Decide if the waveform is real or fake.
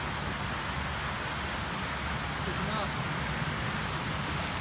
real